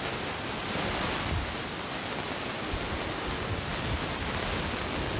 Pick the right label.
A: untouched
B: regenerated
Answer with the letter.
A